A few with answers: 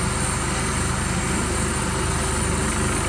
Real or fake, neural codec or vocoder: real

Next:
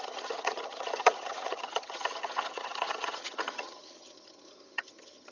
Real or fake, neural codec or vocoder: fake, vocoder, HiFi-GAN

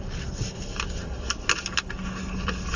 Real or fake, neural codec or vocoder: real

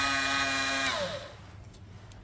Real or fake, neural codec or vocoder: real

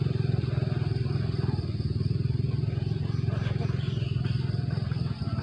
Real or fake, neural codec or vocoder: real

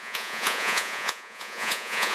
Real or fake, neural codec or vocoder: fake, vocoder, Vocos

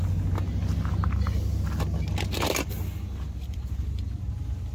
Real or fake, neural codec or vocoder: real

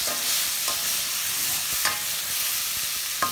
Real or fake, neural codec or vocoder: real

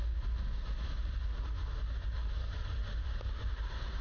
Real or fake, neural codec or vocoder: real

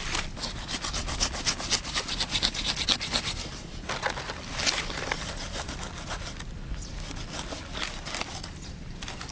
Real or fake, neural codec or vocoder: real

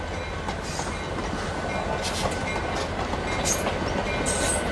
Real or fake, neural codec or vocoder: real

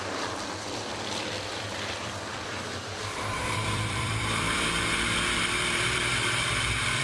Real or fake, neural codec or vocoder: fake, vocoder, BigVGAN v2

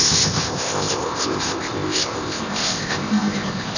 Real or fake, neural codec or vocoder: fake, codec, ZipCodec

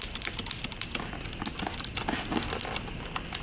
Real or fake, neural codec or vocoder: real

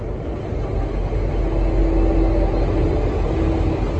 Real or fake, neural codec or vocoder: real